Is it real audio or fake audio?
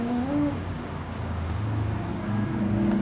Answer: fake